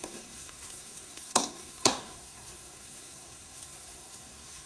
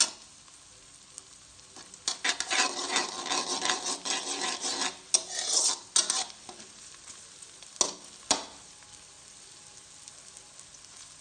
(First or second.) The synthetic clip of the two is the first